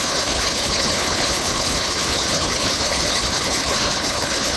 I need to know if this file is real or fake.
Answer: fake